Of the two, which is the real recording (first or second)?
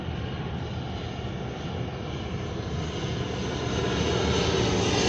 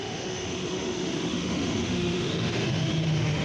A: first